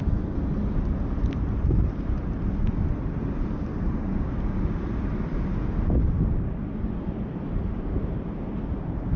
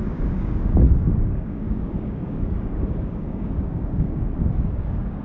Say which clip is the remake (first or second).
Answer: second